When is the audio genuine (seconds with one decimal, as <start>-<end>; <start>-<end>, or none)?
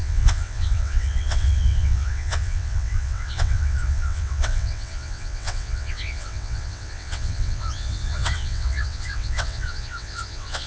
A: none